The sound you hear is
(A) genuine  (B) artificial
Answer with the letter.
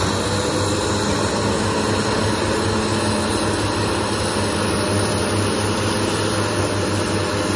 A